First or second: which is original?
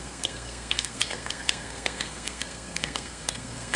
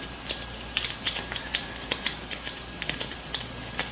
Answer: second